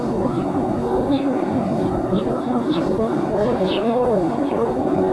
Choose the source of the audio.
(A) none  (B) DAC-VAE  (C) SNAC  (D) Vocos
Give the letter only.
C